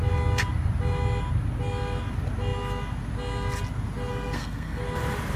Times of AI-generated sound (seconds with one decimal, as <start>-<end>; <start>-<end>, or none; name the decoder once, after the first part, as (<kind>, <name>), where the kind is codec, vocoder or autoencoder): 4.1-4.8 (codec, SNAC)